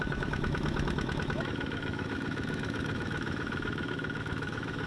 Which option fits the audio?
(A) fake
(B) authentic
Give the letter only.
A